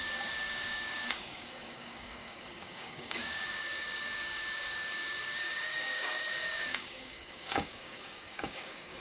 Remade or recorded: remade